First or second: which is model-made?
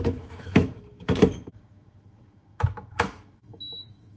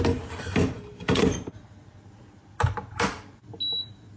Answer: first